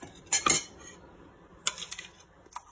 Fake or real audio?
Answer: fake